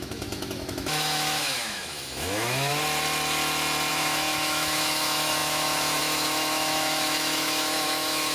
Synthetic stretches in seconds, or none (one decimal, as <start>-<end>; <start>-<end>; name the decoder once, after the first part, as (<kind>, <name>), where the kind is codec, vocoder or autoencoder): 0.0-2.7 (autoencoder, DAC-VAE); 3.9-8.3